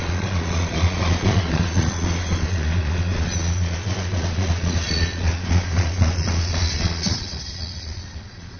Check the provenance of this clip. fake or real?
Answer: fake